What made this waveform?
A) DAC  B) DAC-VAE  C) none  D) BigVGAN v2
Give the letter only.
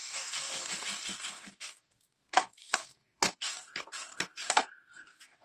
A